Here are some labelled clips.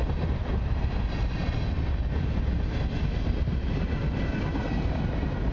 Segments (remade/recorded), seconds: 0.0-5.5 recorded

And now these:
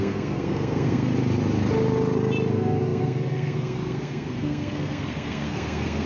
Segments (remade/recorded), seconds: 0.0-1.1 remade; 1.1-2.5 recorded; 2.5-6.1 remade

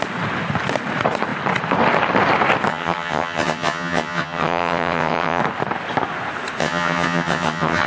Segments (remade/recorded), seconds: 0.0-2.7 recorded; 2.7-5.4 remade; 5.4-6.6 recorded; 6.6-7.9 remade